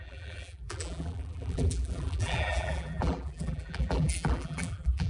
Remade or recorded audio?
remade